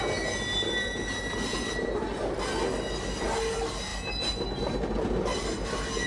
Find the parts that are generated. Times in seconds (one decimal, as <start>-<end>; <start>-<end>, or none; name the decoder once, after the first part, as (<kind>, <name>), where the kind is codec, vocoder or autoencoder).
none